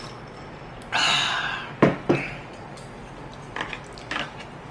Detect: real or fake real